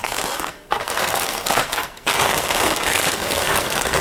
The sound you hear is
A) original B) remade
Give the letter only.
B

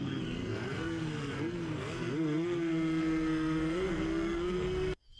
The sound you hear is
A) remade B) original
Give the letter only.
A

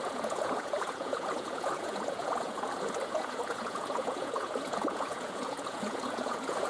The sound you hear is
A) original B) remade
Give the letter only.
B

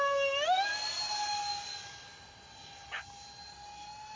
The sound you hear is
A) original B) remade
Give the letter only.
A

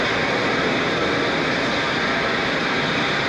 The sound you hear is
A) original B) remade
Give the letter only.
A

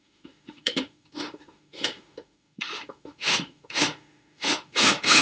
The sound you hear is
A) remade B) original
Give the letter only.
A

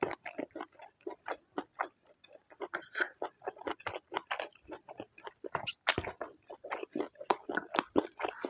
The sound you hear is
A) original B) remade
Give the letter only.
A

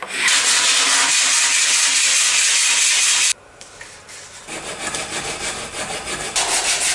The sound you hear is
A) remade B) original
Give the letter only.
B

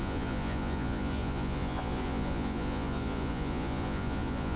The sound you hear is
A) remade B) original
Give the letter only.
A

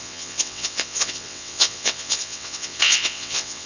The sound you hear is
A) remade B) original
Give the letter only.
A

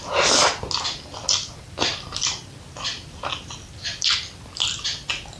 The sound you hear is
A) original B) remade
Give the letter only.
A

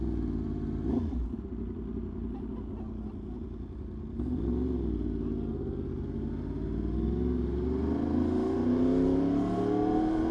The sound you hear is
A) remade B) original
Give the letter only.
B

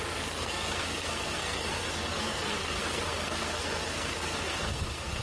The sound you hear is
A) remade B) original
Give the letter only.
A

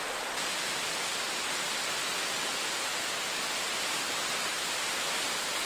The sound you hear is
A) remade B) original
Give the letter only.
B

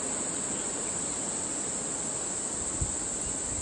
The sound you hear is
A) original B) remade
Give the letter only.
A